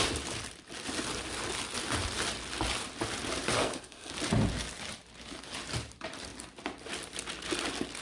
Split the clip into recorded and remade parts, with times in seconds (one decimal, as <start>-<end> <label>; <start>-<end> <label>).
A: 0.0-3.6 recorded; 3.6-4.1 remade; 4.1-8.0 recorded